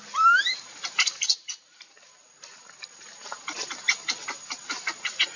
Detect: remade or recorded recorded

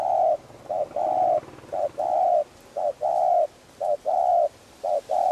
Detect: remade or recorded recorded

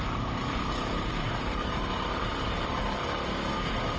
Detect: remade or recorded remade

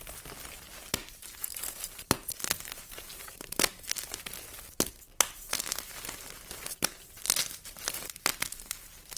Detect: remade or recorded recorded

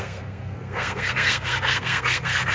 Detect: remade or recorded remade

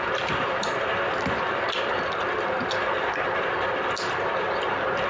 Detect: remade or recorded recorded